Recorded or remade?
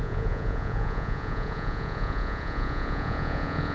remade